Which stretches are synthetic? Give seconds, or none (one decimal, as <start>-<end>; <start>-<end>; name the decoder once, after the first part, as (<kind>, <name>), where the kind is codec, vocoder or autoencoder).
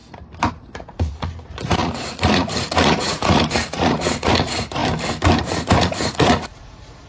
0.5-4.8 (vocoder, Vocos); 5.4-7.1